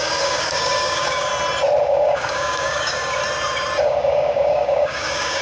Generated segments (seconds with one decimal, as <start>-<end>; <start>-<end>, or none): 0.0-1.3; 1.8-3.2; 3.8-5.4